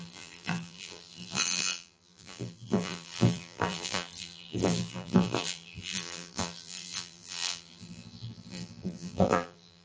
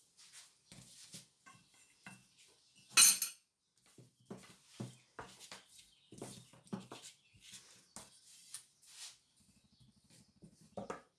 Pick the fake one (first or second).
first